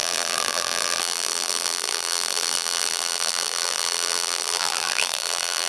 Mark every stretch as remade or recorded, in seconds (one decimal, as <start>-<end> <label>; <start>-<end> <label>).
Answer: 0.0-5.7 remade